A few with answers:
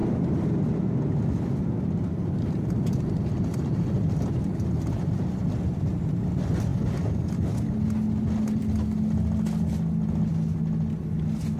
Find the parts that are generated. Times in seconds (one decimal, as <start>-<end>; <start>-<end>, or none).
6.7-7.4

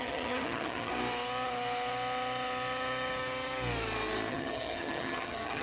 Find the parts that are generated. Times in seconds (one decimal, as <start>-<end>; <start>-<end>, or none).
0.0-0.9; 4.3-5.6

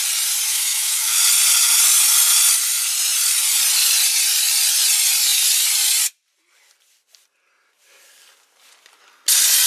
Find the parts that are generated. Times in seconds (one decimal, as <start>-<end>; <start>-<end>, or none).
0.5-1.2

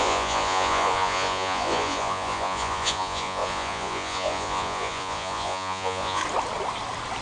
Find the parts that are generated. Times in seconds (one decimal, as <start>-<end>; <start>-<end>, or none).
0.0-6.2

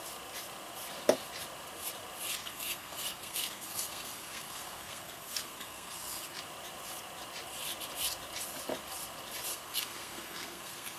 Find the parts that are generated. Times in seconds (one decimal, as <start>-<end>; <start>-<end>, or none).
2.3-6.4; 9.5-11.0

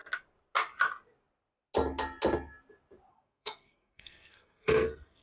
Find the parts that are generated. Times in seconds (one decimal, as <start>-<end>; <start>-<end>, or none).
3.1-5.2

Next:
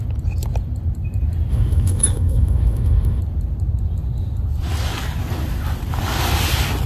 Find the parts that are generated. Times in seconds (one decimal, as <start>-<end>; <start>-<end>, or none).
1.5-3.2

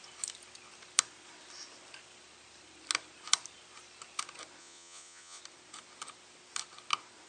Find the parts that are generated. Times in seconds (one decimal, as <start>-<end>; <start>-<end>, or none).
4.6-5.4